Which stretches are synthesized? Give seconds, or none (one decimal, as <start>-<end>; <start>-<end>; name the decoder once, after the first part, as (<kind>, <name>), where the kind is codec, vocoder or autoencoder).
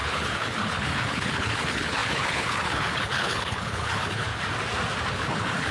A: 0.0-4.3 (codec, HILCodec); 5.1-5.7